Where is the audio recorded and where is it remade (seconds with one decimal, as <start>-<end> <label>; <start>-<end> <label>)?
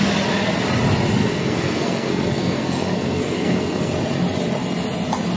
0.0-1.2 recorded; 1.2-3.9 remade; 3.9-5.4 recorded